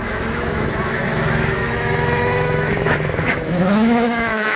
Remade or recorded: remade